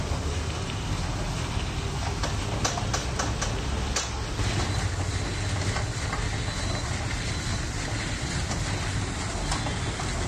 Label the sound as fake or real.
real